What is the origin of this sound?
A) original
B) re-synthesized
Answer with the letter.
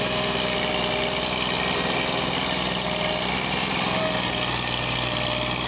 A